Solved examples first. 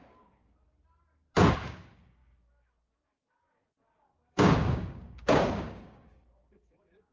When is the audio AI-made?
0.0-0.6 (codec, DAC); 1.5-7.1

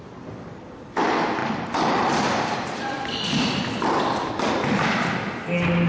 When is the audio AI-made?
1.4-4.3 (vocoder, BigVGAN v2)

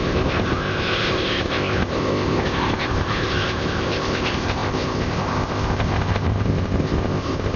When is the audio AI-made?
0.0-7.6 (codec, ZipCodec)

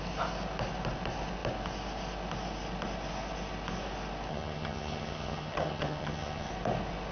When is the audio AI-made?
4.3-6.5 (vocoder, HiFi-GAN)

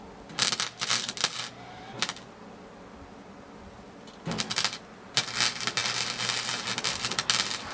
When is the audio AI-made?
none

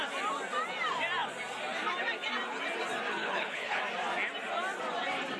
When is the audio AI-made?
3.2-3.8 (codec, HILCodec)

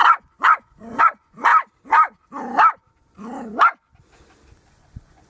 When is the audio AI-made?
0.0-1.5 (vocoder, Vocos); 4.7-5.3

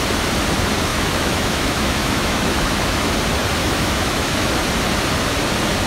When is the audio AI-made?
0.9-3.1 (autoencoder, DAC-VAE); 3.6-4.5